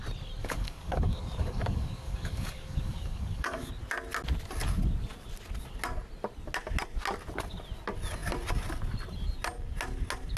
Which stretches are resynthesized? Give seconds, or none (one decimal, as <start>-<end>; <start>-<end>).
0.4-3.7